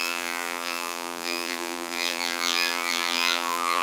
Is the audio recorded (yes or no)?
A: no